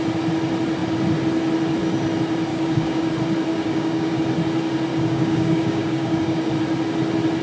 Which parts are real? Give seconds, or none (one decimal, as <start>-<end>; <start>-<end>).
0.0-2.5; 3.1-3.5; 4.2-4.9; 6.5-7.4